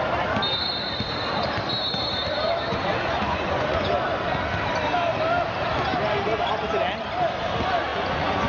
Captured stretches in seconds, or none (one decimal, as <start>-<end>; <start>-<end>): 0.0-2.9; 3.9-7.9